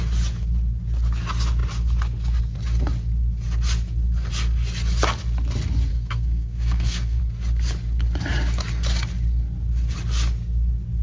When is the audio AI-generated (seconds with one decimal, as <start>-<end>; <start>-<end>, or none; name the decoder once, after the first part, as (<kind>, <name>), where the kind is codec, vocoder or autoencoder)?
5.9-7.2 (codec, SNAC)